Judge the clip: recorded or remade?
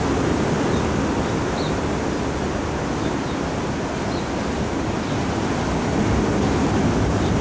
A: recorded